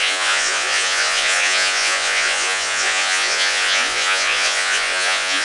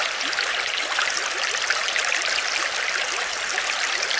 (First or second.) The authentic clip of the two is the second